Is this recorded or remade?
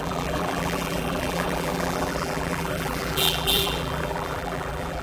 remade